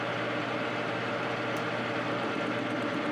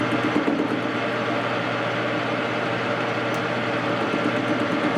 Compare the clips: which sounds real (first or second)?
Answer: second